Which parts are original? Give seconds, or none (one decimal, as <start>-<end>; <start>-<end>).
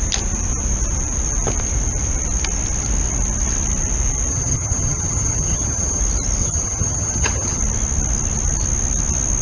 0.0-4.3; 6.0-6.4; 7.6-9.4